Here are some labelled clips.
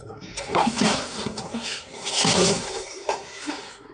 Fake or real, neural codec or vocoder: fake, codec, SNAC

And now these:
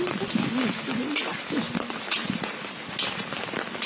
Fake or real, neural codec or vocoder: real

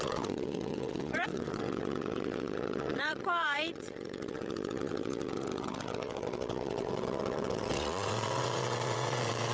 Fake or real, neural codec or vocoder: fake, vocoder, WaveNeXt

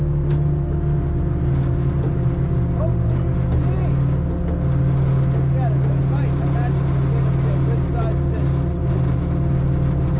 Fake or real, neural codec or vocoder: real